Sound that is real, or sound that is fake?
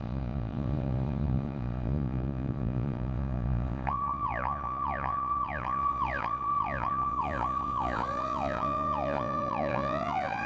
fake